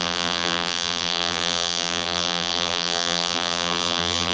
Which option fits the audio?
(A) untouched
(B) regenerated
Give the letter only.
B